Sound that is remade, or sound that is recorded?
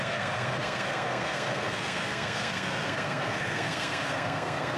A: remade